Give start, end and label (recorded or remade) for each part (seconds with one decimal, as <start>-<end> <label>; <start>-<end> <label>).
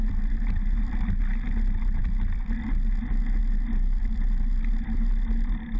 0.0-5.8 remade